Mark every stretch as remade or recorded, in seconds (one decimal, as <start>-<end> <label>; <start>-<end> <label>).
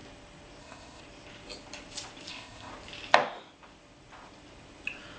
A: 0.0-0.6 recorded; 0.6-1.0 remade; 1.0-2.3 recorded; 2.3-2.7 remade; 2.7-5.2 recorded